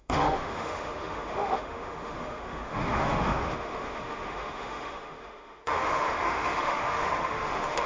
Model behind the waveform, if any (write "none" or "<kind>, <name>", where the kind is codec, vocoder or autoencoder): autoencoder, DAC-VAE